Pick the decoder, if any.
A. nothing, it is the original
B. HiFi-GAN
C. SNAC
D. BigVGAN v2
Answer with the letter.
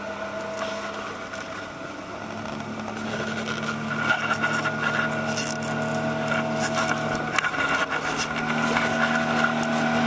A